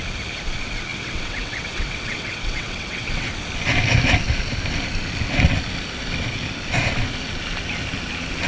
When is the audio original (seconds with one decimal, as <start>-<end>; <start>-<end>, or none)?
0.0-0.9; 3.3-8.5